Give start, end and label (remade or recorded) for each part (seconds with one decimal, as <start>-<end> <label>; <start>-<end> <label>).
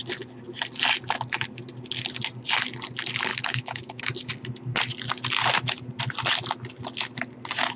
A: 0.0-3.3 recorded; 3.3-4.0 remade; 4.0-7.8 recorded